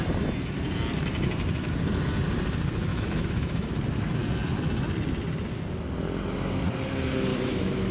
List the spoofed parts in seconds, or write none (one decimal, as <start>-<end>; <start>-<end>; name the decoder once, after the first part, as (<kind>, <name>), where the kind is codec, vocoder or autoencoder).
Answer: 2.9-3.7 (autoencoder, DAC-VAE); 7.3-7.9